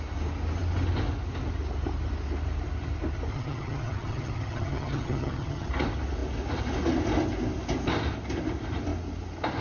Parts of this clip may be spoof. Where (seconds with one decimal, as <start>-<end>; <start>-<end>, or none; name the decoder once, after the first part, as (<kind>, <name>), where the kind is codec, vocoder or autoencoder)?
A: 3.3-5.7 (vocoder, HiFi-GAN)